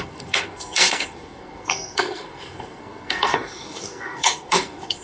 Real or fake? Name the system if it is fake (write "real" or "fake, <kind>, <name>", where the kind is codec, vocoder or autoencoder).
fake, codec, SNAC